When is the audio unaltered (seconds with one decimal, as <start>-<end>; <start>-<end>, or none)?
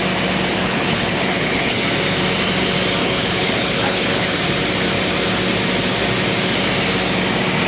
0.0-0.6; 1.8-3.0; 4.4-7.7